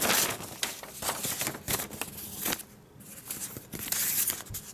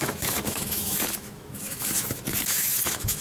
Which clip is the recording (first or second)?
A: first